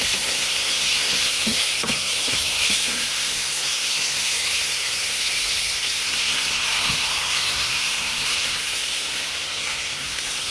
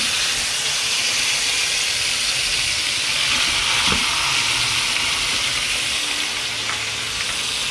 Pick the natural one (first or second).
second